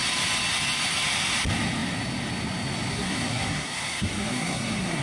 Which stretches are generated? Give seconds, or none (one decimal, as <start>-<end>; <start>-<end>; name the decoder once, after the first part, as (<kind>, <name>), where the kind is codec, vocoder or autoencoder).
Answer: 2.9-5.0 (codec, SNAC)